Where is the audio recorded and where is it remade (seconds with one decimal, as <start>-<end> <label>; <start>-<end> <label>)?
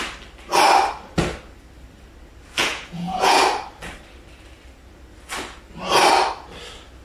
0.0-2.6 recorded; 2.6-3.4 remade; 3.4-7.0 recorded